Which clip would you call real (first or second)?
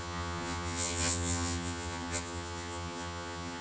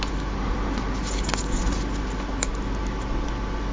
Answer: second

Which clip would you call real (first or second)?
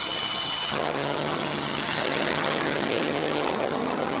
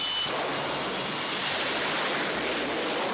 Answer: second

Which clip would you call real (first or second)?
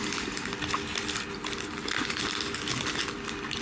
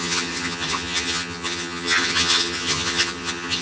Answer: first